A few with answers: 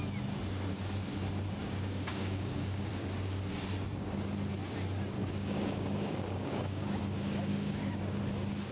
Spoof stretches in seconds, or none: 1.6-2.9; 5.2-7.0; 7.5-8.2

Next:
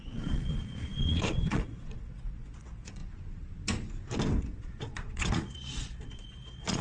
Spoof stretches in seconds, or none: 0.0-3.0; 4.4-6.8

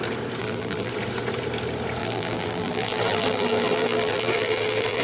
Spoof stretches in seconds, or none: 0.4-0.9; 2.0-5.0